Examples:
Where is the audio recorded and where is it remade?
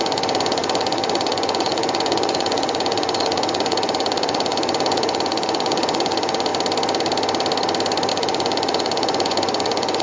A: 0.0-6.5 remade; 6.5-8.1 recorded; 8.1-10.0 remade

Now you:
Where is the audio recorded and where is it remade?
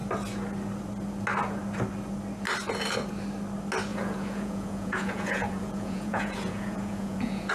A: 0.0-3.9 recorded; 3.9-7.5 remade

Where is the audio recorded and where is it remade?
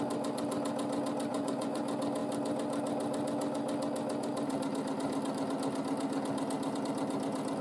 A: 0.0-1.3 recorded; 1.3-1.8 remade; 1.8-7.6 recorded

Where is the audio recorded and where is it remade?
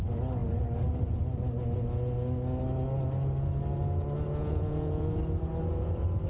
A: 0.0-4.4 recorded; 4.4-5.2 remade; 5.2-6.3 recorded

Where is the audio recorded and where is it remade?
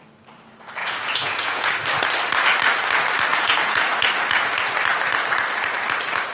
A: 0.0-0.8 recorded; 0.8-1.7 remade; 1.7-3.3 recorded; 3.3-3.9 remade; 3.9-6.3 recorded